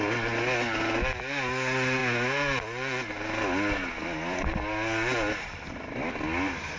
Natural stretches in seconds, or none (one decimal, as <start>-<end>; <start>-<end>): 0.0-6.8